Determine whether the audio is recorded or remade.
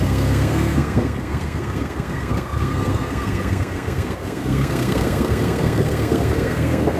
remade